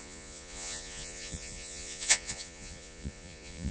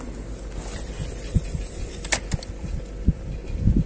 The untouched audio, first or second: second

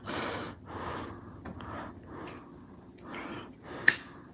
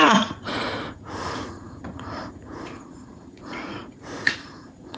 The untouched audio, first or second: first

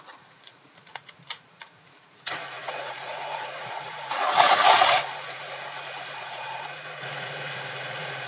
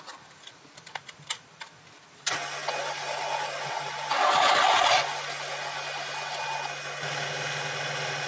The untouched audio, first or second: second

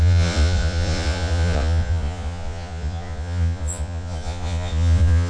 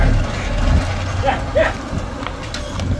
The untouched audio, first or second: second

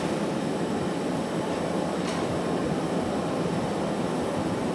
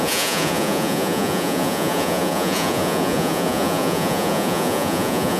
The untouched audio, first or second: first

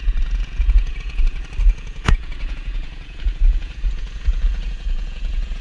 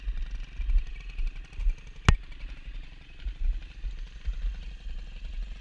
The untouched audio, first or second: second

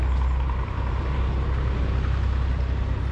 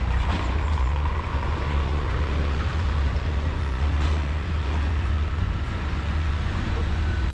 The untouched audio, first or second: first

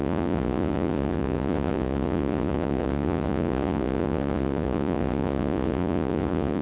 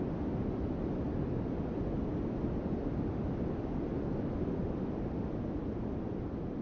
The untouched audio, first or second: second